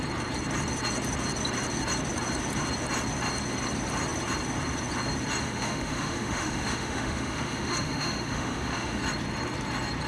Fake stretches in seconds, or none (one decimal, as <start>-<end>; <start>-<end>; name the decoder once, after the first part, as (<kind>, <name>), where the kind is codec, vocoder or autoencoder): 5.4-9.0 (autoencoder, DAC-VAE)